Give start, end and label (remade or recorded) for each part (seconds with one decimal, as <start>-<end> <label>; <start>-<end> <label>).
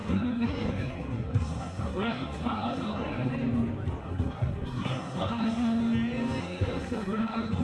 0.0-3.3 remade; 3.3-4.0 recorded; 4.0-5.8 remade; 5.8-6.4 recorded; 6.4-7.6 remade